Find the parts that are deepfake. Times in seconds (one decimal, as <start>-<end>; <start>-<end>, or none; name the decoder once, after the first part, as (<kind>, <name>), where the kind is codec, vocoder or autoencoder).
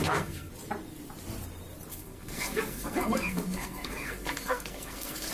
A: 0.0-0.5 (codec, SNAC); 1.9-5.3